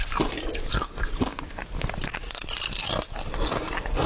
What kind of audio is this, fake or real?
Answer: real